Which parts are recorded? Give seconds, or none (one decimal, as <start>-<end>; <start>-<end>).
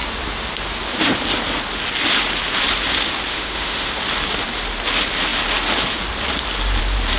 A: 0.0-3.3; 3.9-7.2